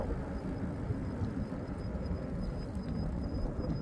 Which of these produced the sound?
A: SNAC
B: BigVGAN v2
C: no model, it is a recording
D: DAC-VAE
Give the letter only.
C